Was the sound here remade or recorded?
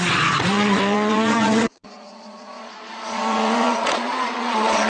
remade